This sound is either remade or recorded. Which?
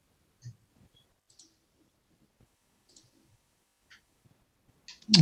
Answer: recorded